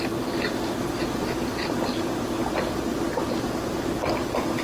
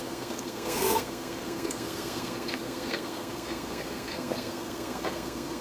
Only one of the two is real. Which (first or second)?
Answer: first